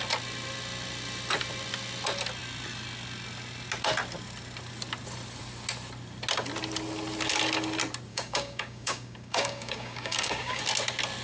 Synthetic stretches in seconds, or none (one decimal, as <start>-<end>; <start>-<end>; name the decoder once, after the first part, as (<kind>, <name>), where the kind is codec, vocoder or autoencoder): 8.1-10.6 (codec, DAC)